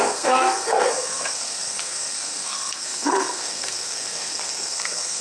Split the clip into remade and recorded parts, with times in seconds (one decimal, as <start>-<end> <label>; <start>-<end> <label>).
0.0-5.2 remade